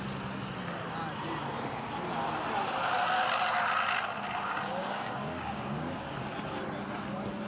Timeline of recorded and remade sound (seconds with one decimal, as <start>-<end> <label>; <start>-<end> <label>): 0.0-4.8 recorded; 4.8-6.2 remade; 6.2-7.5 recorded